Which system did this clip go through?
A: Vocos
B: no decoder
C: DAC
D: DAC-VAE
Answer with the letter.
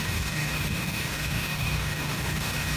C